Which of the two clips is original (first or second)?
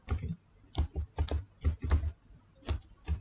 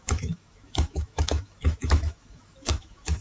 first